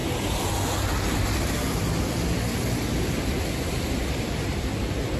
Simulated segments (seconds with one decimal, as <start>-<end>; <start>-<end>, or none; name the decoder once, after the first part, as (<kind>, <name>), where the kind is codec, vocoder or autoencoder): 3.1-5.2 (vocoder, BigVGAN v2)